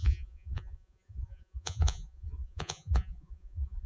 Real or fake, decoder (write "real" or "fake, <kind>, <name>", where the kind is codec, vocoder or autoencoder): fake, vocoder, Vocos